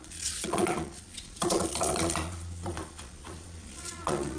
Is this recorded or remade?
remade